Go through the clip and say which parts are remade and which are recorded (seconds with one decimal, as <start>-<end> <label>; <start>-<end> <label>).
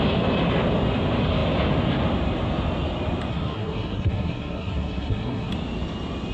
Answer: 0.0-3.3 recorded; 3.3-5.5 remade; 5.5-6.3 recorded